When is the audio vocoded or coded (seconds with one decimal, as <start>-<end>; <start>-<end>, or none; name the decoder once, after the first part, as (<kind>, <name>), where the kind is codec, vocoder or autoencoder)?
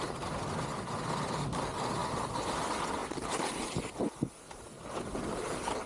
none